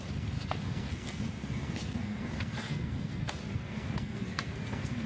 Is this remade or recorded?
remade